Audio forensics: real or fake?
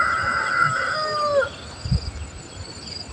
real